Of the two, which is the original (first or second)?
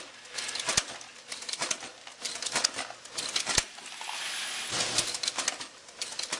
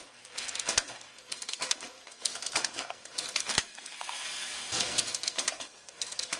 first